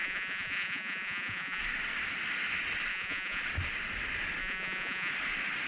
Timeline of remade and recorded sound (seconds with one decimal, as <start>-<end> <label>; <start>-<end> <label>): 0.0-1.6 remade; 1.6-2.9 recorded; 2.9-3.4 remade; 3.4-4.4 recorded; 4.4-5.1 remade; 5.1-5.7 recorded